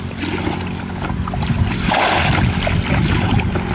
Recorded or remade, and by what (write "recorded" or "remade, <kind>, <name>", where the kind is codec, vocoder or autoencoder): recorded